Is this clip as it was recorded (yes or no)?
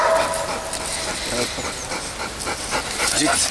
yes